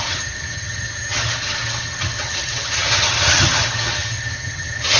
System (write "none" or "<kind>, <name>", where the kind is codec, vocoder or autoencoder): vocoder, HiFi-GAN